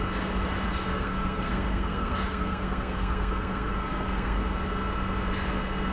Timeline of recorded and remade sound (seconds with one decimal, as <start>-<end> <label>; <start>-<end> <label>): 0.0-0.9 recorded; 0.9-4.4 remade; 4.4-5.9 recorded